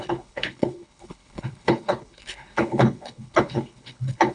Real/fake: fake